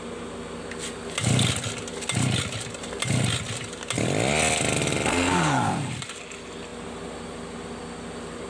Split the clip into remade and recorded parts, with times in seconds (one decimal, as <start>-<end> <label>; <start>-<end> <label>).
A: 0.0-5.1 recorded; 5.1-5.9 remade; 5.9-8.5 recorded